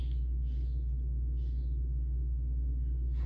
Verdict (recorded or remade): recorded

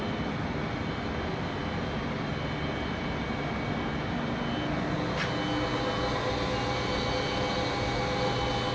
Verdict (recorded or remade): recorded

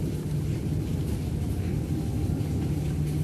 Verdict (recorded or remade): recorded